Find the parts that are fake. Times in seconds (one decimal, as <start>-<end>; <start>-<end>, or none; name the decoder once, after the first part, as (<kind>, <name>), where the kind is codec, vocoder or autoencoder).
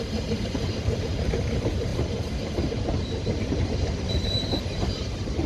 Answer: 0.0-5.5 (vocoder, BigVGAN v2)